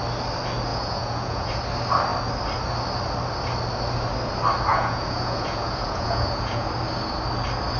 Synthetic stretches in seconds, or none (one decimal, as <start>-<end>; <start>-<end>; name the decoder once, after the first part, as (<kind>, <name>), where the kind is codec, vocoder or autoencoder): 0.7-1.6 (vocoder, Vocos); 4.7-6.7